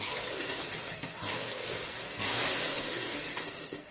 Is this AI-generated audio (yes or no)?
yes